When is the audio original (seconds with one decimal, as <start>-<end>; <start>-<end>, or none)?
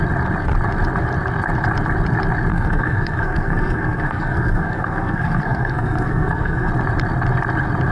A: 0.0-2.5; 6.7-7.9